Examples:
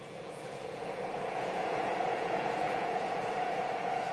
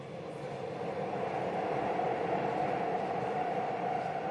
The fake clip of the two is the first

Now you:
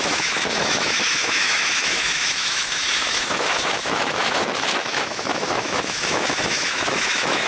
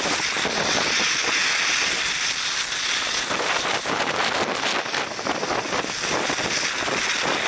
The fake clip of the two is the first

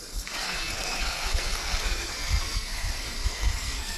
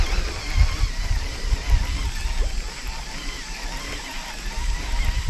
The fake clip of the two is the first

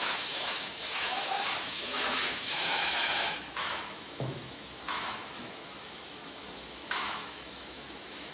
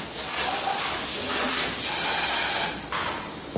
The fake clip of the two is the first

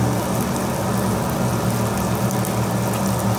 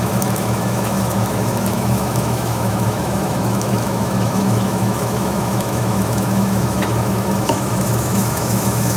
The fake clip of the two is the second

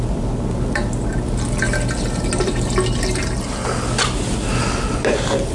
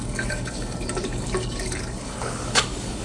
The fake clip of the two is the second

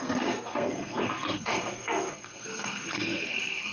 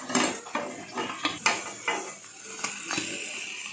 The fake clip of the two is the first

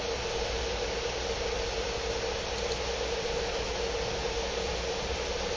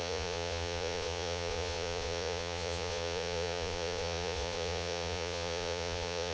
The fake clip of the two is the second